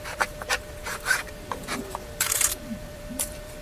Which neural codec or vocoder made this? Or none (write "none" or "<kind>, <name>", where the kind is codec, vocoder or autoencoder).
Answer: vocoder, BigVGAN v2